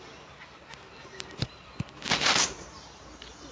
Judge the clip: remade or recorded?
recorded